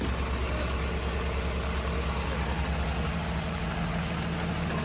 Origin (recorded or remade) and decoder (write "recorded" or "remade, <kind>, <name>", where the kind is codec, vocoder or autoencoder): recorded